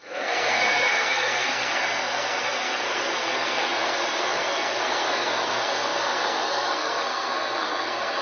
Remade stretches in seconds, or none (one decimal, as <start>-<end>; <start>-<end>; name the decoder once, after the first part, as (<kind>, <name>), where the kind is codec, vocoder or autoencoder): 0.0-8.2 (codec, SNAC)